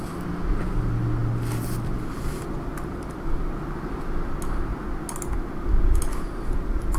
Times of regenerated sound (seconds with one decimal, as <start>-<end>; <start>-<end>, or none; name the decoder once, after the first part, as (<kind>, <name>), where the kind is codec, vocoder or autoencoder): none

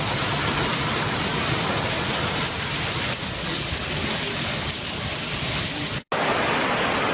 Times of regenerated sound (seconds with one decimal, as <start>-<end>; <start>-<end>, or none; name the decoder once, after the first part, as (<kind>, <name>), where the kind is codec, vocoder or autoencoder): none